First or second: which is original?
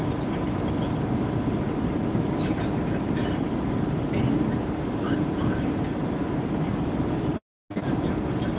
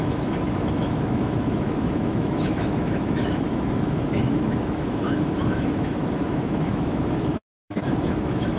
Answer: first